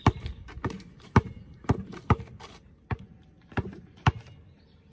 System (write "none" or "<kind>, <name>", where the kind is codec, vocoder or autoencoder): none